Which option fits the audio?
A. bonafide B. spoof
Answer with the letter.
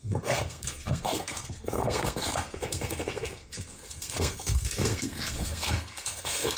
B